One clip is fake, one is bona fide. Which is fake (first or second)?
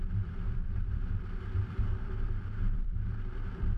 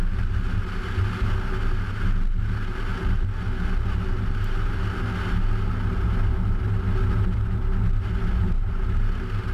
first